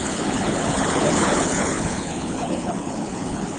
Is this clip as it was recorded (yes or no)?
no